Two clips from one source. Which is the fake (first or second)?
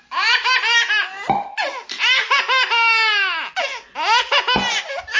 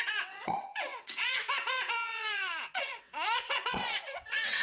second